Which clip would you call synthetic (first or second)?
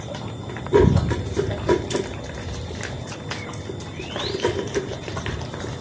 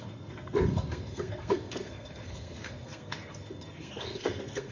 second